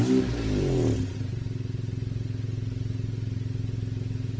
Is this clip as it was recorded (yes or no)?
yes